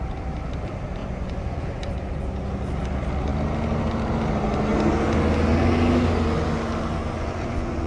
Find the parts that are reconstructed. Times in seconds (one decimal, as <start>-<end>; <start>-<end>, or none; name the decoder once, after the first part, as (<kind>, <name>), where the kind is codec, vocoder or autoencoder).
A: 1.0-1.9 (vocoder, Vocos); 7.0-7.9